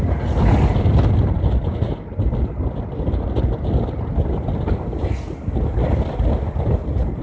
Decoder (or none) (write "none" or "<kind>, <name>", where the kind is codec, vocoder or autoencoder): none